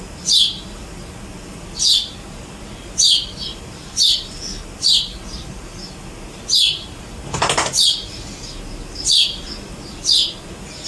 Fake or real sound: real